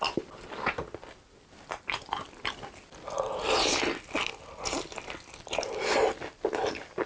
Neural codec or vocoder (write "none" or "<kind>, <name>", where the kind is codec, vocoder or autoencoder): none